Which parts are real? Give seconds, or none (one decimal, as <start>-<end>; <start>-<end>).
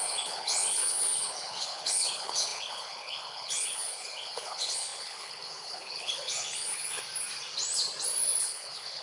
7.0-8.4